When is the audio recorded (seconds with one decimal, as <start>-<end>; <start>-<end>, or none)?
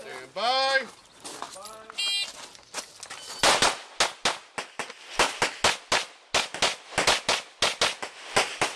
0.0-8.8